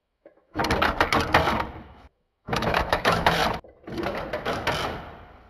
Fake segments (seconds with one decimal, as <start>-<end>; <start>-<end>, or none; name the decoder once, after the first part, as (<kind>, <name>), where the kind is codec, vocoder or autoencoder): 0.0-0.6 (autoencoder, DAC-VAE); 1.8-3.4